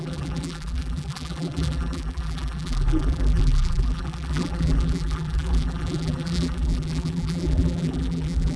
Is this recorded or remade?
remade